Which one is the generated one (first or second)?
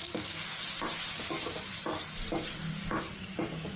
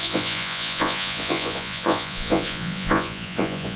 second